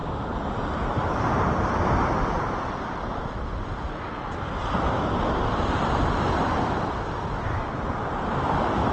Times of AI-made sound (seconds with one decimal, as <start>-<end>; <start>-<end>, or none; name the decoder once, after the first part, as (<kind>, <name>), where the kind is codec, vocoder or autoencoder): none